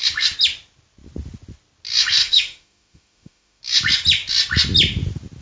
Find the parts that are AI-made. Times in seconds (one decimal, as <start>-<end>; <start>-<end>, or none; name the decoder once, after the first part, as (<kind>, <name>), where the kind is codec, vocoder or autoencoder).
2.2-3.6 (autoencoder, DAC-VAE)